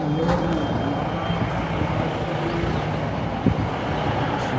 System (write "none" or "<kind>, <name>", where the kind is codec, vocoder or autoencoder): none